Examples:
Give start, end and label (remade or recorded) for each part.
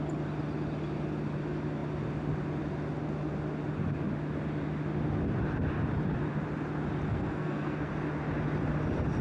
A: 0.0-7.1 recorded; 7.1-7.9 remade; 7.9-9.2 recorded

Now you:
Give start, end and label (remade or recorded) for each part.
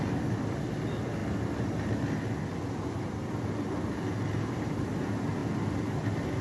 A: 0.0-6.4 recorded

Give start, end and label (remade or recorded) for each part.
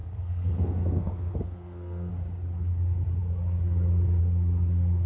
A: 0.0-2.1 remade; 2.1-5.1 recorded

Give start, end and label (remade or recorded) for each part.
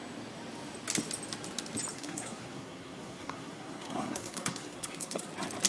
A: 0.0-1.9 recorded; 1.9-5.3 remade; 5.3-5.7 recorded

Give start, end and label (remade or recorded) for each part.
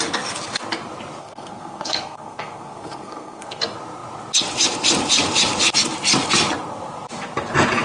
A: 0.0-1.2 recorded; 1.2-3.6 remade; 3.6-7.8 recorded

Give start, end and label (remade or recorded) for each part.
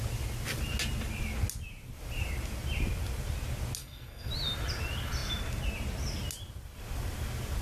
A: 0.0-3.8 recorded; 3.8-4.3 remade; 4.3-7.6 recorded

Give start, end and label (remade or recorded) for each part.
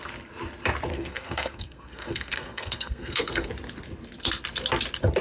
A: 0.0-0.9 recorded; 0.9-3.5 remade; 3.5-5.2 recorded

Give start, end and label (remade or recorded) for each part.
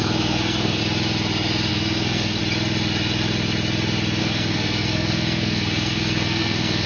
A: 0.0-0.8 remade; 0.8-1.7 recorded; 1.7-2.4 remade; 2.4-4.2 recorded; 4.2-6.9 remade